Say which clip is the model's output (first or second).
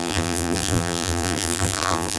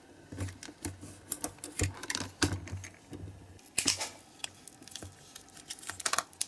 first